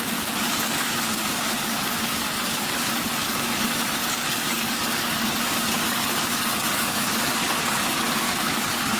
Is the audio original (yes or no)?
no